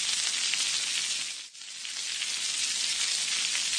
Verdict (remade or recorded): recorded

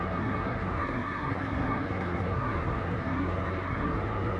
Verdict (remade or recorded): remade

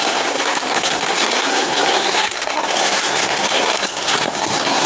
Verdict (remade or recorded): remade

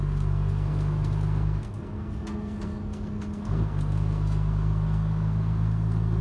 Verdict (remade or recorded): remade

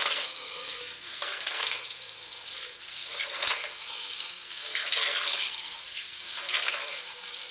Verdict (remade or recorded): remade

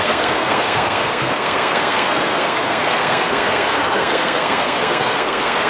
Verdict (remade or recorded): remade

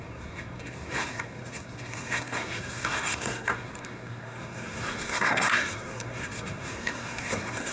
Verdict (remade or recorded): remade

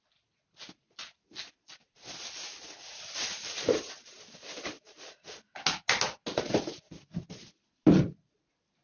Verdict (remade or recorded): recorded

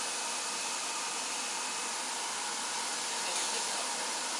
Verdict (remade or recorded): recorded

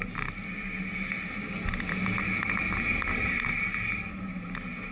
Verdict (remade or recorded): recorded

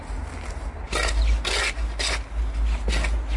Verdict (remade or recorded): recorded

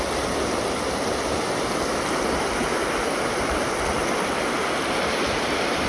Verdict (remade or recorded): recorded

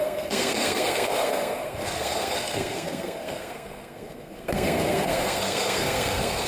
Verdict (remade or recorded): remade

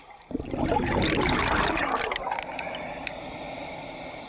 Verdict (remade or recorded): recorded